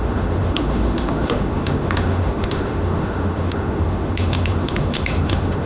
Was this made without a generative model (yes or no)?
no